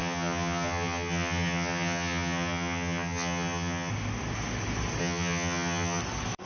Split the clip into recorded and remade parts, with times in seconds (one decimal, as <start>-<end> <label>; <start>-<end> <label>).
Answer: 0.0-3.9 remade; 3.9-5.0 recorded; 5.0-6.0 remade; 6.0-6.5 recorded